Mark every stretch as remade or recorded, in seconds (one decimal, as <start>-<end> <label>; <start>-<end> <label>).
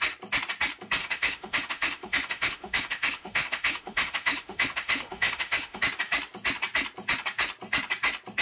0.0-1.0 recorded; 1.0-5.8 remade; 5.8-8.4 recorded